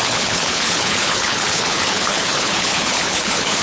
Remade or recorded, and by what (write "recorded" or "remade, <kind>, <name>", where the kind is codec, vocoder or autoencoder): remade, codec, HILCodec